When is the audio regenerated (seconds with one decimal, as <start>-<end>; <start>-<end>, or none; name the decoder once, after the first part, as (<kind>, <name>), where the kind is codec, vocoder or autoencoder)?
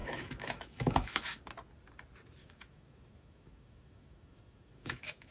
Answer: 0.0-1.4 (autoencoder, DAC-VAE); 2.4-5.3